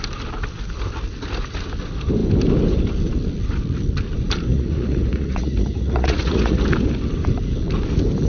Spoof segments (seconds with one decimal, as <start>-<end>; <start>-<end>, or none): 4.5-6.6